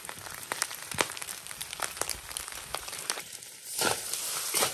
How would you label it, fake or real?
fake